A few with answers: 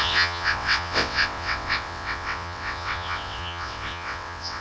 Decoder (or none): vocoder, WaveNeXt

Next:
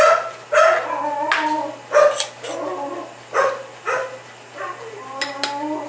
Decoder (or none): none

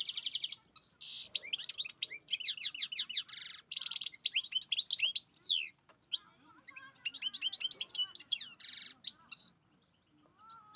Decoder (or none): none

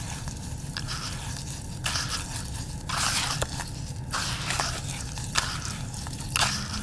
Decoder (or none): none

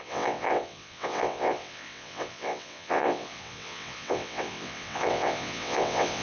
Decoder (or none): vocoder, WaveNeXt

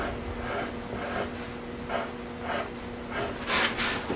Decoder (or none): none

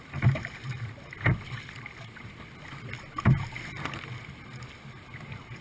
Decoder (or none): none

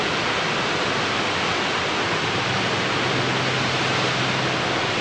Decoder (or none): none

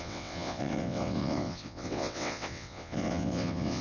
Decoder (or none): vocoder, WaveNeXt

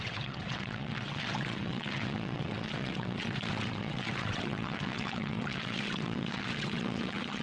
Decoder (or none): vocoder, WaveNeXt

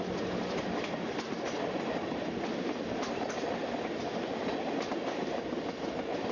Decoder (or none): none